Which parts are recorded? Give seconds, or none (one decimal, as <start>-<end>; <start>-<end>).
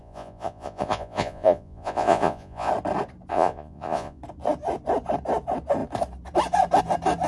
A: 2.7-3.3; 4.2-7.3